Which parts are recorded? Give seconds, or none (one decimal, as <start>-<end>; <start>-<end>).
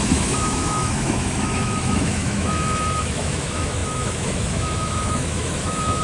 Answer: none